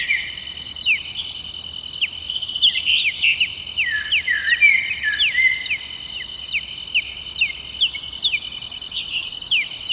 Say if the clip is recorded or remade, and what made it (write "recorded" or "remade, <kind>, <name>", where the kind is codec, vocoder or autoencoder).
recorded